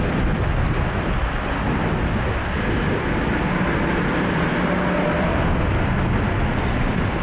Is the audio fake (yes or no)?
no